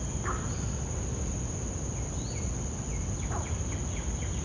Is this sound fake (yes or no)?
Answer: no